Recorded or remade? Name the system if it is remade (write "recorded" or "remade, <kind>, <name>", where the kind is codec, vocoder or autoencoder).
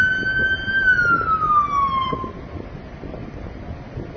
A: recorded